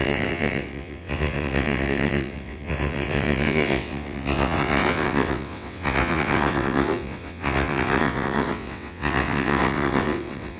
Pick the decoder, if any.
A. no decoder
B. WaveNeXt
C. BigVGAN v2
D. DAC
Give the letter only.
B